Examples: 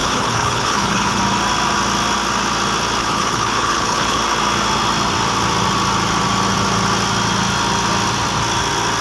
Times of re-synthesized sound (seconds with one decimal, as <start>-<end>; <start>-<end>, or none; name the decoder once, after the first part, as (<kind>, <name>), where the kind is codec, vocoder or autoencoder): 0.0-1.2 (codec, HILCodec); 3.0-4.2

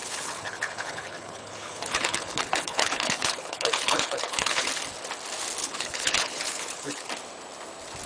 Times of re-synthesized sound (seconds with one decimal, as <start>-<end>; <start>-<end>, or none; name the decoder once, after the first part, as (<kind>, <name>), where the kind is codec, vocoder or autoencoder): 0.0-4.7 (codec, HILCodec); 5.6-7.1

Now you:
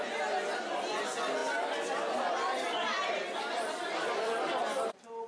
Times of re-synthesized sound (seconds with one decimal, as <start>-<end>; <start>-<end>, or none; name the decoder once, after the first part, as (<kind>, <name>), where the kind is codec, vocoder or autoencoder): none

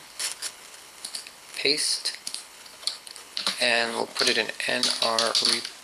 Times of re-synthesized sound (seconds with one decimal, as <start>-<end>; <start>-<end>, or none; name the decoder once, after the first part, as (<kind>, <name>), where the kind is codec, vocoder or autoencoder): 0.0-4.1 (codec, HILCodec)

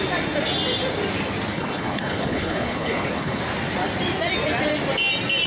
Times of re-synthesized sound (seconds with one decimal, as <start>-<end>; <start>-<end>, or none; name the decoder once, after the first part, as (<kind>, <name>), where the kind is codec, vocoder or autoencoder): 1.5-3.4 (codec, HILCodec)